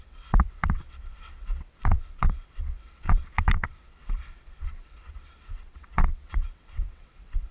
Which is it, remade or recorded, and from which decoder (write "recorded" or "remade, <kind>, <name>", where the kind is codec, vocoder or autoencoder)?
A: remade, vocoder, WaveNeXt